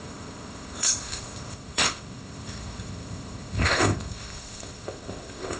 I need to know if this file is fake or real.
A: fake